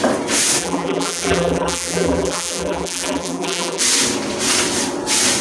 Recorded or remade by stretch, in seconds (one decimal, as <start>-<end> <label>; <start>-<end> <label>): 0.0-0.6 recorded; 0.6-3.8 remade; 3.8-5.4 recorded